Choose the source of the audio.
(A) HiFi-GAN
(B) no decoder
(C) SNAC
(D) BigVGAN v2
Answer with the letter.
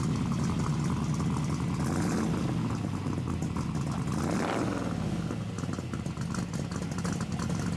B